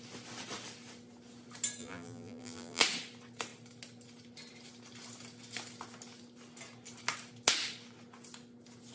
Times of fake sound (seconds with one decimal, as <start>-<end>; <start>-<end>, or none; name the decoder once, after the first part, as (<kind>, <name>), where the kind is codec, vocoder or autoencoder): 1.8-2.8 (vocoder, BigVGAN v2)